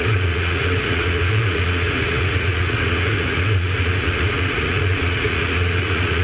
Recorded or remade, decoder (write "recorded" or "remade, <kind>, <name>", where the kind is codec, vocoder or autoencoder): remade, vocoder, Vocos